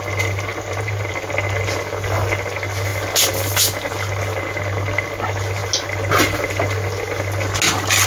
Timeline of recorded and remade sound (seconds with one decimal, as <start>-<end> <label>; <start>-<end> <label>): 0.0-0.5 recorded; 0.5-1.1 remade; 1.1-8.1 recorded